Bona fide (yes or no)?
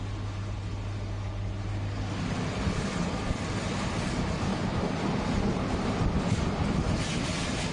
yes